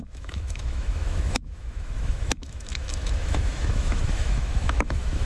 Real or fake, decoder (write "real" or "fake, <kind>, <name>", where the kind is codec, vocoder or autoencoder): fake, autoencoder, DAC-VAE